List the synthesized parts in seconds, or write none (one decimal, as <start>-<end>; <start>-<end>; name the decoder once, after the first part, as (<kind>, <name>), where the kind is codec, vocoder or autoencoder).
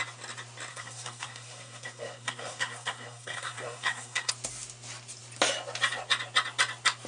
0.7-4.3 (codec, SNAC)